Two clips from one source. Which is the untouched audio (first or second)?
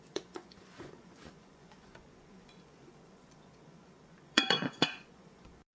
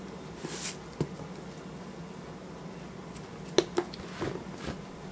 second